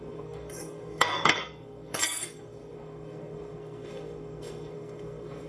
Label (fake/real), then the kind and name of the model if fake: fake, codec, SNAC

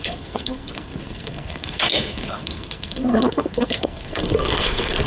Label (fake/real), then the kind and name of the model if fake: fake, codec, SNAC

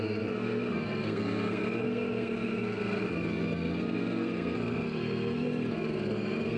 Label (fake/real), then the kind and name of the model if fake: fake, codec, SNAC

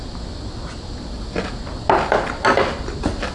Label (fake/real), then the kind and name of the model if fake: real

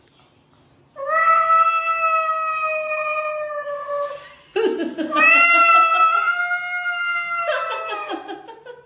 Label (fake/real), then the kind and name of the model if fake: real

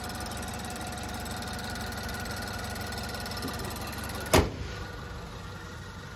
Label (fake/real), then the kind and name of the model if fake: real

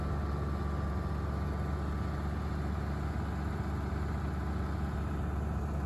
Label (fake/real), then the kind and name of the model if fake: real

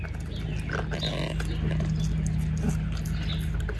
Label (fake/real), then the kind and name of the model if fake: real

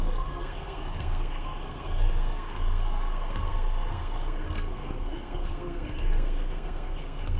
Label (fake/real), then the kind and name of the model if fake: fake, codec, SNAC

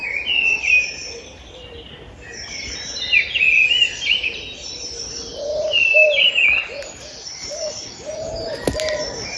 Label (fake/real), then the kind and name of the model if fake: real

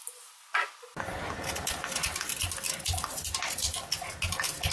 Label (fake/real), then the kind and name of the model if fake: real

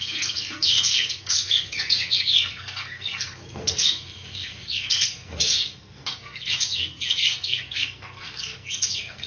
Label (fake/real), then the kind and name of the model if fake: fake, codec, SNAC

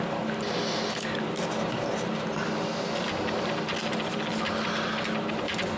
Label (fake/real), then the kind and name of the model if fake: real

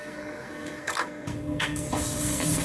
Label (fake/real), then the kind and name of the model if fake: fake, codec, SNAC